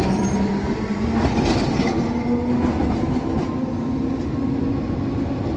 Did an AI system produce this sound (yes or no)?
no